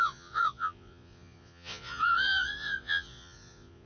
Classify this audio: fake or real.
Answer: fake